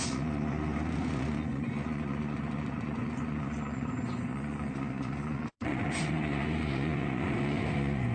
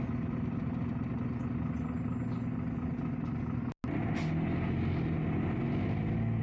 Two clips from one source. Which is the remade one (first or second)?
first